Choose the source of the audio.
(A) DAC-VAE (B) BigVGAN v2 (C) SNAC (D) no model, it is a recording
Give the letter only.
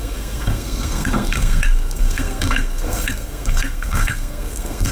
C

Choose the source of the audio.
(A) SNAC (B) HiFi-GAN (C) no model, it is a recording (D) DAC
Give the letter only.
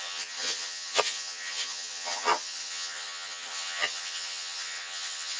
B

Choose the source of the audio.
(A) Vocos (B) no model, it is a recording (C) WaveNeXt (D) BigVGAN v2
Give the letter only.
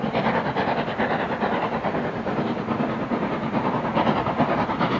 B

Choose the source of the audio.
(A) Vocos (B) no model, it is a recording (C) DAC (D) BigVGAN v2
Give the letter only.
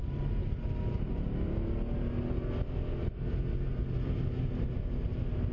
B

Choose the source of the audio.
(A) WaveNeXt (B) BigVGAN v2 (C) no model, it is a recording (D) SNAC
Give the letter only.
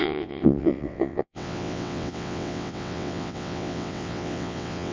A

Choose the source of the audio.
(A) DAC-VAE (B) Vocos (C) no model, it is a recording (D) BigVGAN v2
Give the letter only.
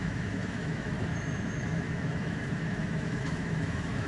A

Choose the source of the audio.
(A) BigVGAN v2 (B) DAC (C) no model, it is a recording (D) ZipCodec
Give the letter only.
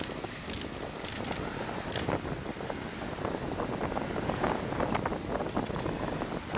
C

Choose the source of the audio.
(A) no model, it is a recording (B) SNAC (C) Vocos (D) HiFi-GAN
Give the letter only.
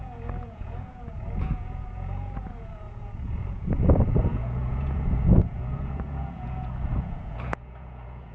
C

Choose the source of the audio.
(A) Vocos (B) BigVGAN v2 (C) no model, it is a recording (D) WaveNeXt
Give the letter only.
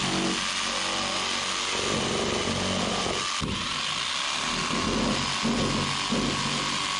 C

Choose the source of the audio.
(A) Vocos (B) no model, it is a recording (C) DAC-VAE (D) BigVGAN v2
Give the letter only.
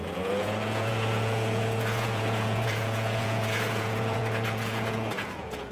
A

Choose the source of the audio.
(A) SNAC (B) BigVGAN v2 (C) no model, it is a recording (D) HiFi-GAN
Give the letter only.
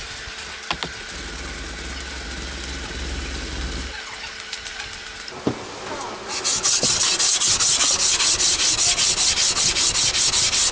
C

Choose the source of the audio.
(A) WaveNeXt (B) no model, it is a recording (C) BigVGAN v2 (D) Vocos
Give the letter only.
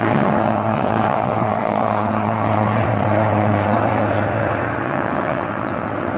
A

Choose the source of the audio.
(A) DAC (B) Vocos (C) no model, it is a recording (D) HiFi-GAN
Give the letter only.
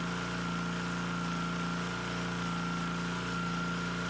C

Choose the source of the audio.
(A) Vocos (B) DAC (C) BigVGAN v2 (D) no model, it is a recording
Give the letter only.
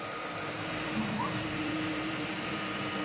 C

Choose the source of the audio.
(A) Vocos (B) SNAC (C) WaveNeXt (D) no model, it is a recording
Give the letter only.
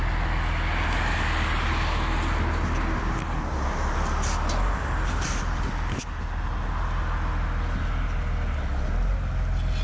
D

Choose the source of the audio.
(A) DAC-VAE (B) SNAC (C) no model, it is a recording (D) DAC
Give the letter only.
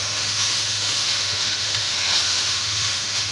A